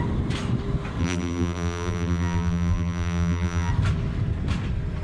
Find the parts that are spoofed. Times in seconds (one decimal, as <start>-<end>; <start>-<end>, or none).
1.0-3.7